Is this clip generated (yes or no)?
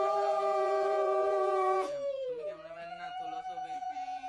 yes